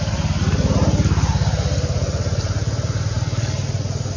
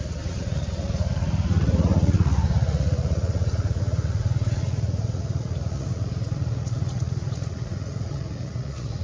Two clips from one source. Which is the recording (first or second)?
first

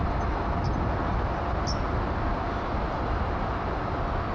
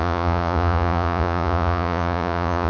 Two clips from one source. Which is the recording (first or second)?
first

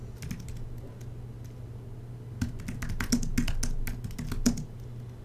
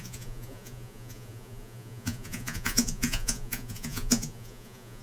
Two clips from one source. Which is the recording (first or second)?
first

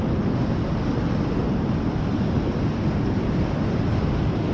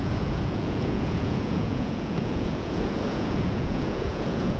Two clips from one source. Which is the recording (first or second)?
first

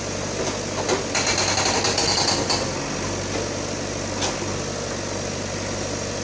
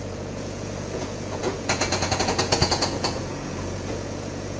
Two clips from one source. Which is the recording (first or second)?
first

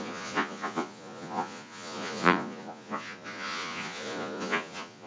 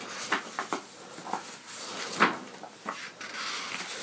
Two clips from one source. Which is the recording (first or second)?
second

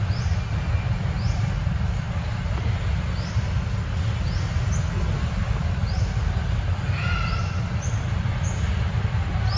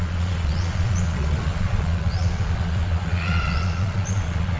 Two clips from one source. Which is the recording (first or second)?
first